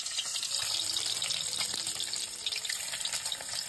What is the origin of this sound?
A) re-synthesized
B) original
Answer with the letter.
A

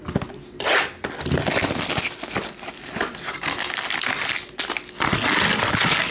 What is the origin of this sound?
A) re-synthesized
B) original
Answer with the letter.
B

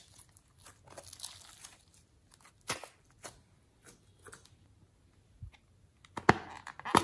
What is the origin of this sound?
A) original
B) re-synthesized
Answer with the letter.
A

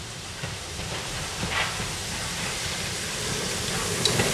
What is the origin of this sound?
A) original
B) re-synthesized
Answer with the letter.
A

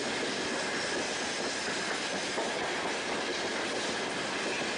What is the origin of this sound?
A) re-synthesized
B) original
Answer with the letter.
B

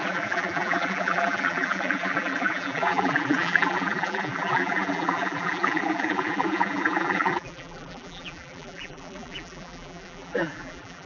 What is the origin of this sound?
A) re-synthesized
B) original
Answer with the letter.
A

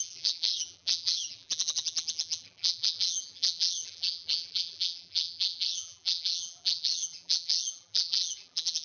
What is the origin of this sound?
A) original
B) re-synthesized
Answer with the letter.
B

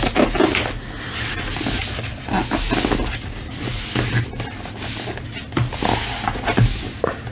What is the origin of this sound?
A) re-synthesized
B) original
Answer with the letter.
B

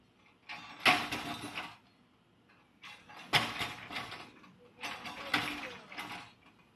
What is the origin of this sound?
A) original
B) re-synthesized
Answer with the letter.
A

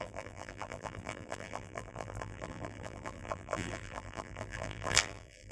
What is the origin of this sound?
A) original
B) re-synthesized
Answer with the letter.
B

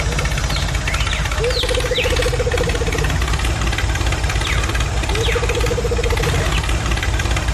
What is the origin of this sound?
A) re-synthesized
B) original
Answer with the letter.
B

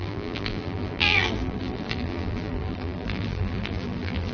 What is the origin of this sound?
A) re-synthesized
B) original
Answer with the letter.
A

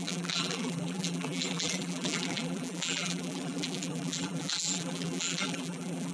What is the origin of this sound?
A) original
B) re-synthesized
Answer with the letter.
B